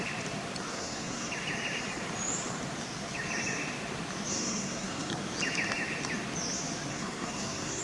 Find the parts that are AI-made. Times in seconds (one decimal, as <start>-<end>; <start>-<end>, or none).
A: 0.7-1.3; 4.3-5.1; 6.9-7.8

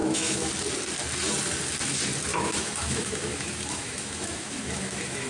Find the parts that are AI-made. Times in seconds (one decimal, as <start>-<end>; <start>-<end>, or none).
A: 0.0-0.5; 2.3-5.3

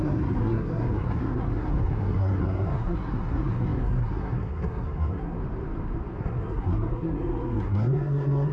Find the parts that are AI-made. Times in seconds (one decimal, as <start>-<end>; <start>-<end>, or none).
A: 0.0-5.4; 6.2-8.5

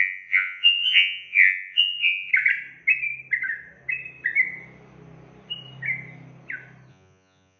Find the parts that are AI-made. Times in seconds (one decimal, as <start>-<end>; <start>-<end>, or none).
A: 0.0-2.3; 6.9-7.6

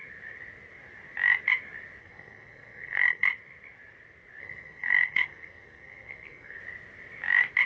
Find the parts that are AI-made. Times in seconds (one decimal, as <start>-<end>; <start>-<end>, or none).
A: 2.0-3.3; 4.4-6.6

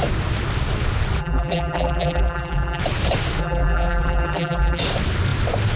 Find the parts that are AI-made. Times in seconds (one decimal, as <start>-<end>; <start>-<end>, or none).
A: 1.2-2.8; 3.4-4.8

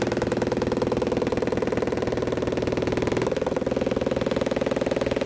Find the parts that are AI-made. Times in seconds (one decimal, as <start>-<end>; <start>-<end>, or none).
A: none

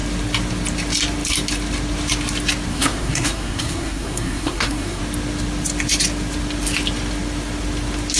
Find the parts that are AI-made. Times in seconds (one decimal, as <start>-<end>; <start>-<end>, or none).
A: 2.7-5.0